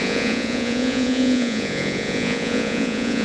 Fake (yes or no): yes